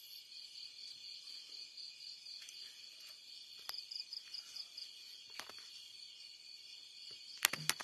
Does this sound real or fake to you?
real